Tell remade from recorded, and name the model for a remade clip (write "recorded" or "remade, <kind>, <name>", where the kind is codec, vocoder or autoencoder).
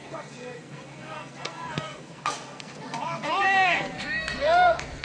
remade, codec, SNAC